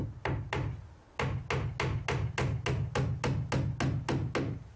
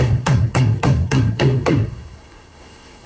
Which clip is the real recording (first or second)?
first